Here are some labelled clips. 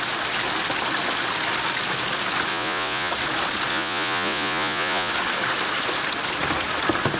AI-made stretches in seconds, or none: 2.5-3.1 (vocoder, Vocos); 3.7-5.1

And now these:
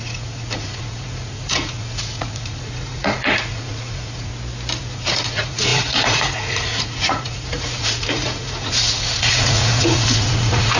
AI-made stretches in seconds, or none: 0.0-4.3 (vocoder, Vocos); 4.8-10.8

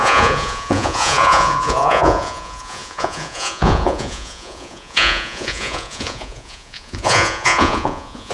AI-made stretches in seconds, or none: 0.0-8.3 (vocoder, Vocos)

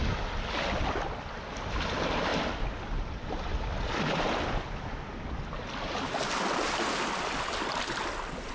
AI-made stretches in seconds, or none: none

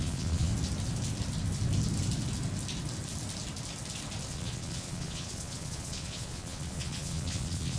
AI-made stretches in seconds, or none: 0.0-0.5 (vocoder, Vocos); 4.3-7.8